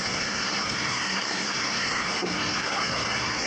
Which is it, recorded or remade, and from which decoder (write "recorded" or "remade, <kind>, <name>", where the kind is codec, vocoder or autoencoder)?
remade, codec, SNAC